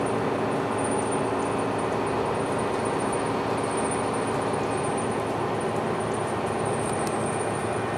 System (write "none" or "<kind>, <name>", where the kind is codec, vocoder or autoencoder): none